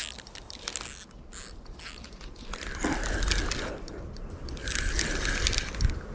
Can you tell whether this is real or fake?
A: real